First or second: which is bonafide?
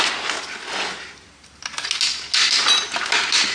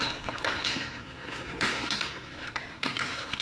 first